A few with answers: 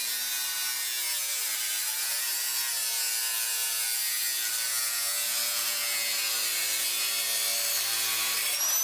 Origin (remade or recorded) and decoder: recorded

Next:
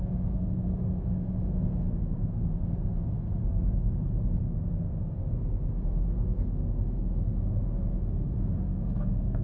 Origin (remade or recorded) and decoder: remade, codec, SNAC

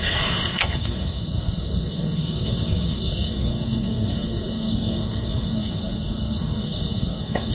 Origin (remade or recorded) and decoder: remade, codec, SNAC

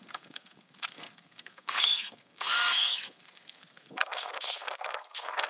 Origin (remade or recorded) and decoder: remade, codec, SNAC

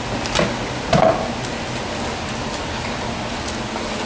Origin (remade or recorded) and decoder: recorded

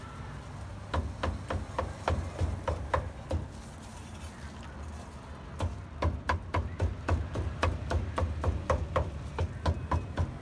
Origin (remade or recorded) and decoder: recorded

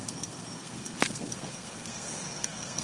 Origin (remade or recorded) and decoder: remade, codec, SNAC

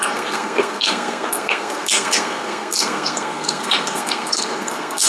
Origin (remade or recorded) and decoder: remade, codec, SNAC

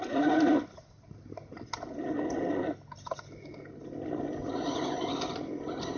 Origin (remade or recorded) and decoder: recorded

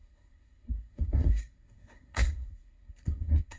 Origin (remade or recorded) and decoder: remade, codec, SNAC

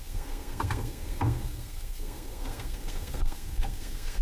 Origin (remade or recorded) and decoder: remade, codec, SNAC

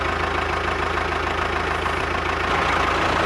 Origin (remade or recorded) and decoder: recorded